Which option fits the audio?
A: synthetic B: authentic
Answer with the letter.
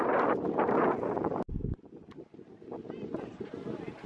B